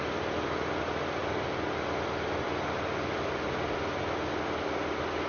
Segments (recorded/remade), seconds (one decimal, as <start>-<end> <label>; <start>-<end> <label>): 0.0-5.3 recorded